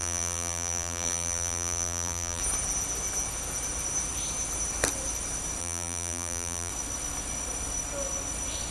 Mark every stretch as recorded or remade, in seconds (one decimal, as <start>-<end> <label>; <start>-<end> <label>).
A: 0.0-2.4 remade; 2.4-5.6 recorded; 5.6-6.7 remade; 6.7-8.7 recorded

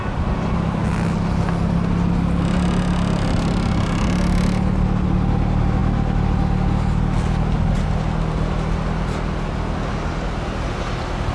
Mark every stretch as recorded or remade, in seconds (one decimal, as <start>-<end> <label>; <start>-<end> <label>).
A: 0.0-11.3 recorded

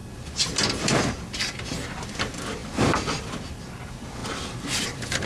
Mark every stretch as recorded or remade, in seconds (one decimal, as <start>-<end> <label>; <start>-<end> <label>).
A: 0.0-2.6 remade; 2.6-3.2 recorded; 3.2-5.3 remade

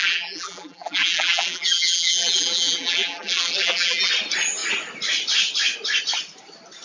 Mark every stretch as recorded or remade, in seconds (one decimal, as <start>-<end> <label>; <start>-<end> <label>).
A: 0.0-4.1 remade; 4.1-6.8 recorded

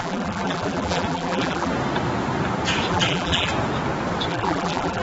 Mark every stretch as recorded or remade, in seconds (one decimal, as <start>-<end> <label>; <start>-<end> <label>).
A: 0.0-1.7 remade; 1.7-2.9 recorded; 2.9-3.5 remade; 3.5-4.3 recorded; 4.3-5.0 remade

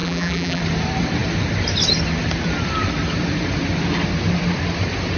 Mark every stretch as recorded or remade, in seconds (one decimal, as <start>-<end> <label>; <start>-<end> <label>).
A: 0.0-0.6 remade; 0.6-5.2 recorded